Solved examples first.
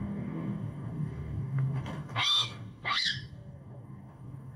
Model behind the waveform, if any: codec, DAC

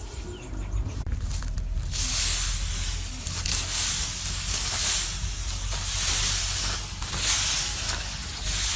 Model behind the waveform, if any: none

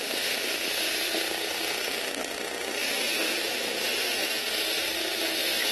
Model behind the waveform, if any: autoencoder, DAC-VAE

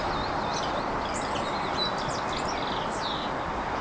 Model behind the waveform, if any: none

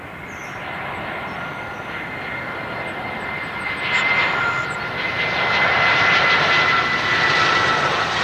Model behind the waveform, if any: none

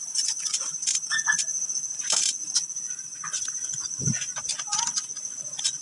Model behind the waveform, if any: none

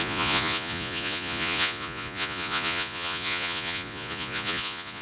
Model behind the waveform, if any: vocoder, Vocos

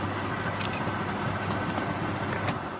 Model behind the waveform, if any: none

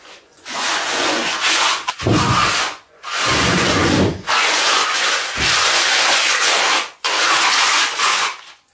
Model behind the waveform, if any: vocoder, Vocos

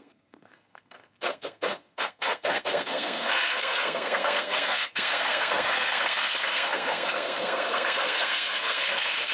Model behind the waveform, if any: codec, SNAC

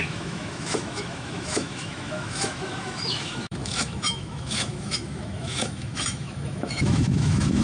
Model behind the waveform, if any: autoencoder, DAC-VAE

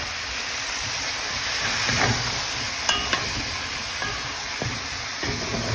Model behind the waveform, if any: vocoder, BigVGAN v2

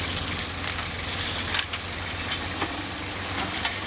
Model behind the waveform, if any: none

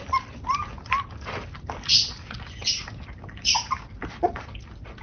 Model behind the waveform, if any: none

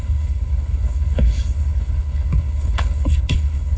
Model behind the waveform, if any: codec, HILCodec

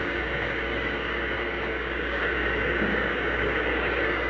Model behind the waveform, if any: codec, DAC